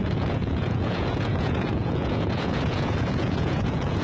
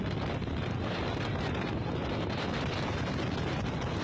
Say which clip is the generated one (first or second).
first